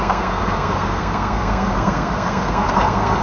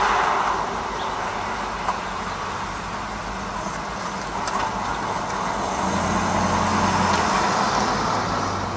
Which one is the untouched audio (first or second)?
second